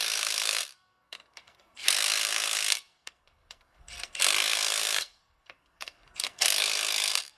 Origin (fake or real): fake